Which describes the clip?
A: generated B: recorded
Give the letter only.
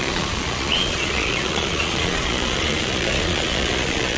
A